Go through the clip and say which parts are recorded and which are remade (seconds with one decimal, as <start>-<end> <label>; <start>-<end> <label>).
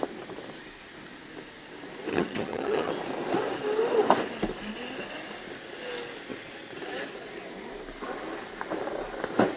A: 0.0-2.1 recorded; 2.1-2.9 remade; 2.9-9.6 recorded